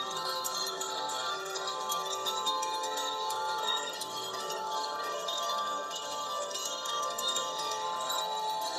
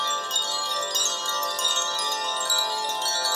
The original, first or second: second